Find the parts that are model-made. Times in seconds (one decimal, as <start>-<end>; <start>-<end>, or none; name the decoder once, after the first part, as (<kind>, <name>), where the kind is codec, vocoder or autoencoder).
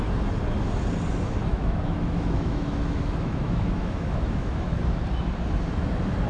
1.5-4.7 (autoencoder, DAC-VAE)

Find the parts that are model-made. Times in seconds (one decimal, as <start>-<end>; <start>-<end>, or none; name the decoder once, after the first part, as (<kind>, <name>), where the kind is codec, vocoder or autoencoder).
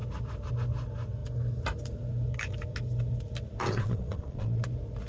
3.6-4.6 (vocoder, Vocos)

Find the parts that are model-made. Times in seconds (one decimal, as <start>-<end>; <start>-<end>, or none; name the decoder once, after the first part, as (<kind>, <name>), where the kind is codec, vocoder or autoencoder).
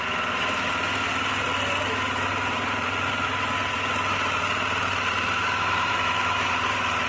5.9-6.5 (autoencoder, DAC-VAE)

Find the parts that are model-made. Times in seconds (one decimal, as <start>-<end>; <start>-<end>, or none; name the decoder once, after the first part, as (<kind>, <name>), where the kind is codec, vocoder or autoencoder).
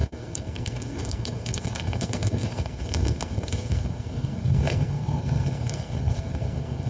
0.0-6.9 (codec, SNAC)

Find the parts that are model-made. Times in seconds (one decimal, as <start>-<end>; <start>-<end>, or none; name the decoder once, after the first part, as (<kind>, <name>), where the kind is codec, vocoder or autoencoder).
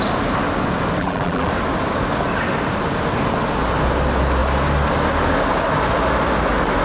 1.0-1.5 (vocoder, BigVGAN v2)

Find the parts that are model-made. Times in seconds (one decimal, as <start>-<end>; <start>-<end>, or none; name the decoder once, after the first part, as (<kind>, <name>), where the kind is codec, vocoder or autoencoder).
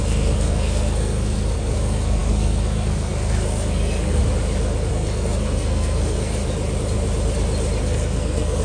0.0-4.2 (codec, SNAC); 4.9-6.4; 7.8-8.6